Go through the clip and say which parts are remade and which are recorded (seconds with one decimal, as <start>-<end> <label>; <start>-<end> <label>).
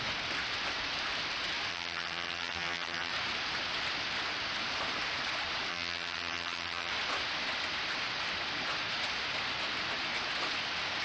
0.0-1.7 recorded; 1.7-3.1 remade; 3.1-5.7 recorded; 5.7-6.9 remade; 6.9-11.0 recorded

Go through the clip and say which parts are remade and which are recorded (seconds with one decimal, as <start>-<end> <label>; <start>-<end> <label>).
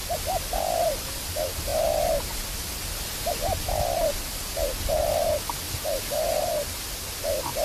0.0-7.6 recorded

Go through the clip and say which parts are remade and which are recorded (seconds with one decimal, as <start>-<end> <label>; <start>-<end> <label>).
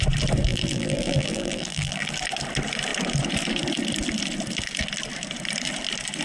0.0-0.5 recorded; 0.5-2.1 remade; 2.1-6.2 recorded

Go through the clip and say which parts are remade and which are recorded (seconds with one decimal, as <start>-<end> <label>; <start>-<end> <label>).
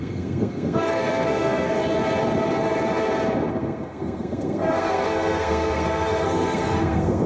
0.0-1.8 remade; 1.8-3.5 recorded; 3.5-7.3 remade